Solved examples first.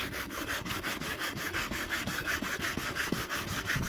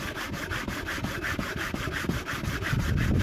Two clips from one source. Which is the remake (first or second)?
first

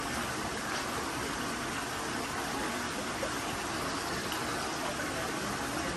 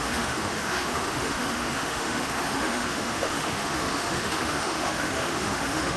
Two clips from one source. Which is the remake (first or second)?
second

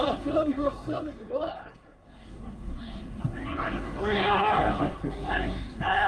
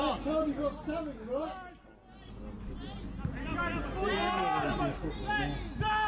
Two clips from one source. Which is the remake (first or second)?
first